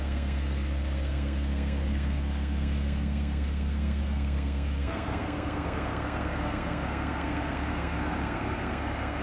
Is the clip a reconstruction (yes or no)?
yes